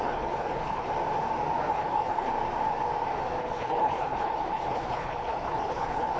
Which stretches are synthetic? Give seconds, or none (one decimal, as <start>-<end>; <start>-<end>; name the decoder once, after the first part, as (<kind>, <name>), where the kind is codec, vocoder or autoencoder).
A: 0.0-0.9 (codec, HILCodec); 1.7-2.3; 3.4-6.2